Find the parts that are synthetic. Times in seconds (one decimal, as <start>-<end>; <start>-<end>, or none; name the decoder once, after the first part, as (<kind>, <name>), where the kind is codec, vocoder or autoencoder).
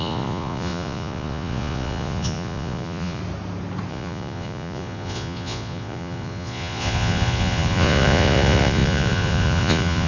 0.0-3.2 (vocoder, Vocos); 3.9-10.1